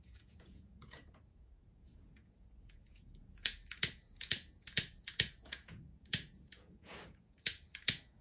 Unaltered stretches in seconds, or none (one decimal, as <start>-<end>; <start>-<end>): none

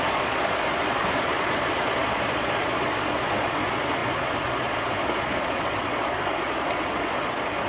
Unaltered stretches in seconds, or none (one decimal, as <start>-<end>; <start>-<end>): none

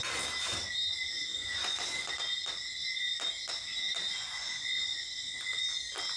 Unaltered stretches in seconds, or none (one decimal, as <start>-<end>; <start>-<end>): 0.0-1.3; 2.1-4.0; 5.4-6.2

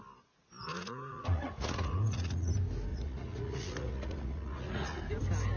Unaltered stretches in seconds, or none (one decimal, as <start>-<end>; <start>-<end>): 0.0-0.7; 2.5-2.9; 5.0-5.6

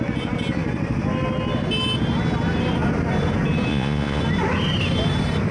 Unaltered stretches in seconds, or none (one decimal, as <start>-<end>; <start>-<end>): 0.0-3.7; 4.2-5.5

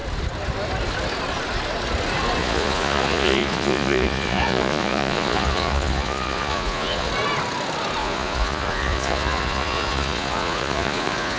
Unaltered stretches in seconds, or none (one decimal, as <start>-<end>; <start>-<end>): 0.0-2.4; 7.1-8.0